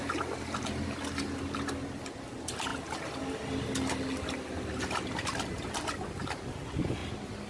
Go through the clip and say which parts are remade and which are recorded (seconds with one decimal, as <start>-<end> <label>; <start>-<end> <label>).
0.0-7.5 recorded